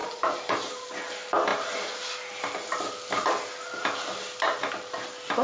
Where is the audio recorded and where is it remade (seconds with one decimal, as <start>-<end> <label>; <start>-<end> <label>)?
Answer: 0.0-0.7 remade; 0.7-5.4 recorded